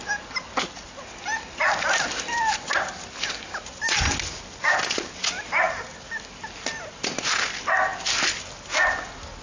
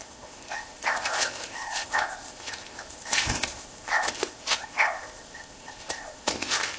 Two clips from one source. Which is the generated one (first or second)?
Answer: second